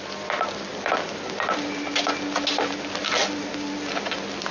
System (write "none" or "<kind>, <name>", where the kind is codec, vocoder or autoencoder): none